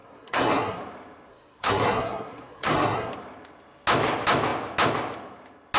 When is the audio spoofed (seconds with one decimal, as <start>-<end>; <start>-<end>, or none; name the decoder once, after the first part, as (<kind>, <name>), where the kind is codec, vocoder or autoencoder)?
0.0-0.8 (codec, SNAC); 1.3-3.1